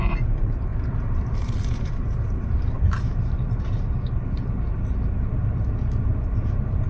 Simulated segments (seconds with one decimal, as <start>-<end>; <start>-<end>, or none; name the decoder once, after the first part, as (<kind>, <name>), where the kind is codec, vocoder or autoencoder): 0.0-6.9 (vocoder, BigVGAN v2)